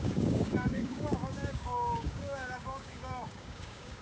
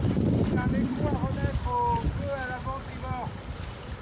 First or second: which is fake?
first